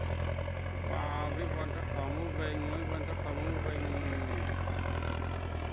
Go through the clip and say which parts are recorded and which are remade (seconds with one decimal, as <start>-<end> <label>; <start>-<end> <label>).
0.0-1.0 recorded; 1.0-1.9 remade; 1.9-5.7 recorded